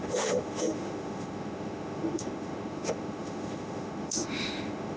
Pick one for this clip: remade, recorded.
remade